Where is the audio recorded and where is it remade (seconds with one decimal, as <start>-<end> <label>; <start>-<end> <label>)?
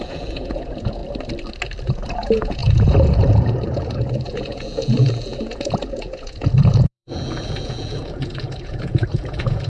0.0-1.0 remade; 1.0-1.8 recorded; 1.8-9.7 remade